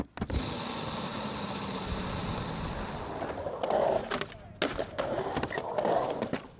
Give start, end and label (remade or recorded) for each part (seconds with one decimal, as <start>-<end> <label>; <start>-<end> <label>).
0.0-6.6 recorded